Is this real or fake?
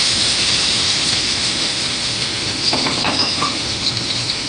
fake